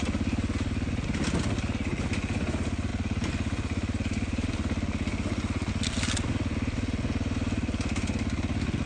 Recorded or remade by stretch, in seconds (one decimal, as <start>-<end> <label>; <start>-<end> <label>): 0.0-8.9 recorded